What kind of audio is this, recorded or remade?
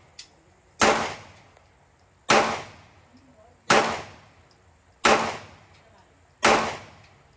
recorded